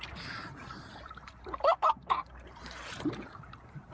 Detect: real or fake fake